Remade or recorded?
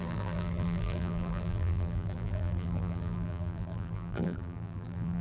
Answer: remade